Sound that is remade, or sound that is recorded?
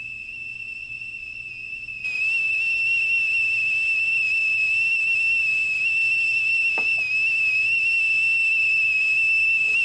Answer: recorded